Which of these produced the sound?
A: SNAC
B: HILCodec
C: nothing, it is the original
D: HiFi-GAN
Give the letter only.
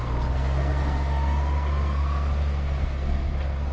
A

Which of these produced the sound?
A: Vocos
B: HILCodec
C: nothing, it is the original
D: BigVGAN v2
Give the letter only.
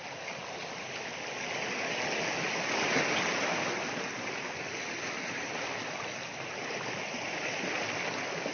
C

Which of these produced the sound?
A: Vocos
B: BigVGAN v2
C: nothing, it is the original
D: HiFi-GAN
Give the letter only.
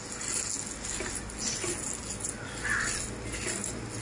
C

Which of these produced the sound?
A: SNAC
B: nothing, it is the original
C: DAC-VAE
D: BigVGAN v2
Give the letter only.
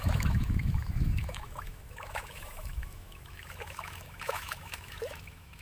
C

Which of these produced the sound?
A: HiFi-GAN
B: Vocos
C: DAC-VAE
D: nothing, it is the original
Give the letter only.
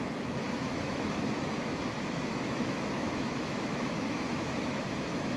C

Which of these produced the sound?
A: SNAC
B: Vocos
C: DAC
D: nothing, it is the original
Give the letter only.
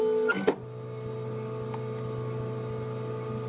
D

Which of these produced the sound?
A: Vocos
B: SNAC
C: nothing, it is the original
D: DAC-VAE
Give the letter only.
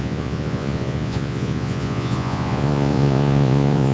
A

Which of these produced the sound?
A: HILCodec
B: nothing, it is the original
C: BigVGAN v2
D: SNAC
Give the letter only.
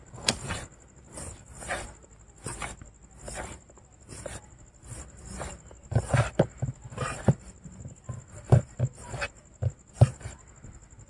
B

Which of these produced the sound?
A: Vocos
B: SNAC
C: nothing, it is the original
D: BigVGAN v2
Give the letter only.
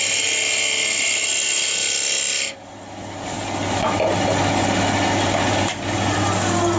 C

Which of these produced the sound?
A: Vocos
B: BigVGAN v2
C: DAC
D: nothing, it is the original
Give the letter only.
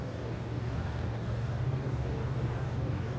C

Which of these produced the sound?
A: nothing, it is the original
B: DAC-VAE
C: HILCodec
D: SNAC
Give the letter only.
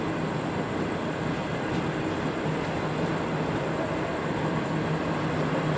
A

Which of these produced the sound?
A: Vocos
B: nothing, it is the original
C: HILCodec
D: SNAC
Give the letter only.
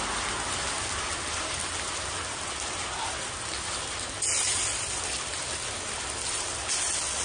B